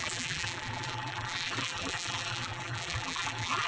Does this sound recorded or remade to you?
remade